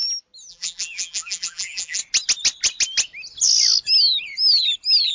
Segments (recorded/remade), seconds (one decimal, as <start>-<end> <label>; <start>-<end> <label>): 0.0-0.5 recorded; 0.5-2.0 remade; 2.0-5.1 recorded